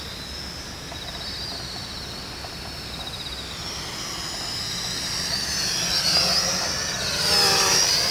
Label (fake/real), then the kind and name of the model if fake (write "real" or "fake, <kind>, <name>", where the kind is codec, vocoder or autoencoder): real